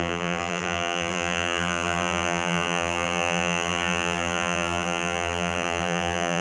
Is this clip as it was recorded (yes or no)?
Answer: no